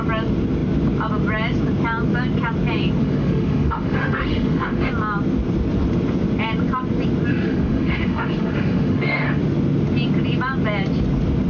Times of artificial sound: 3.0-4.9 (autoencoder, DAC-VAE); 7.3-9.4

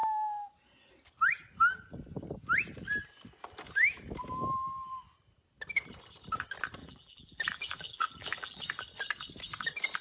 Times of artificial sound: 6.8-8.6 (vocoder, BigVGAN v2)

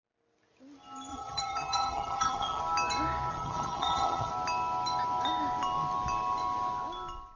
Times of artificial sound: 1.1-2.6 (vocoder, HiFi-GAN); 3.3-4.3

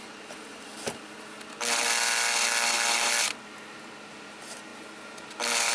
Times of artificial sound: 0.0-0.7 (vocoder, BigVGAN v2); 4.1-4.7

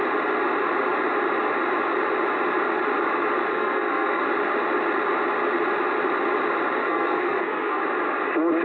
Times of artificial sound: 3.5-4.2 (codec, SNAC); 6.8-7.8

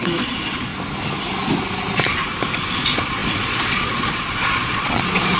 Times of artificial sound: 0.0-0.7 (vocoder, Vocos); 2.6-5.4